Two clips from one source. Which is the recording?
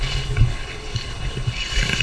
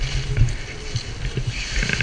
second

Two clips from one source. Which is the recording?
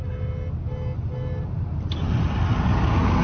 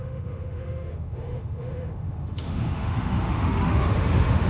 first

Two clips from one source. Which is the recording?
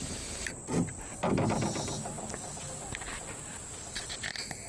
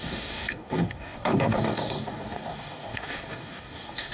first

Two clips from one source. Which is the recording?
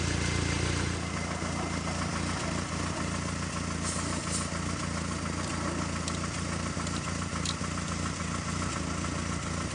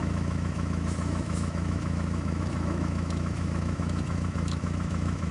first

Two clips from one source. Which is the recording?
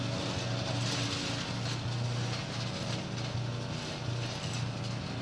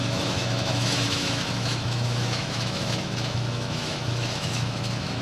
first